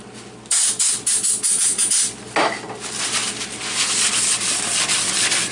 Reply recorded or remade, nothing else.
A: recorded